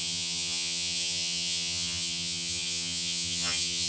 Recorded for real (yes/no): no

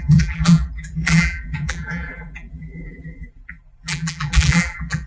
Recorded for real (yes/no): no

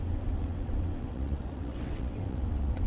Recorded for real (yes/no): no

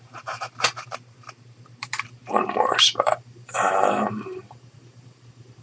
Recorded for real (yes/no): no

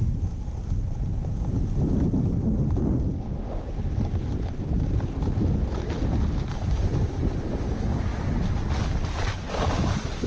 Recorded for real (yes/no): yes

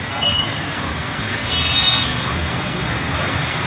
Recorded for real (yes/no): no